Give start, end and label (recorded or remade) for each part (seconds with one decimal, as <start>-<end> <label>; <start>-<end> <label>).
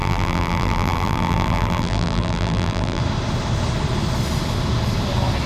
0.0-3.0 remade; 3.0-5.5 recorded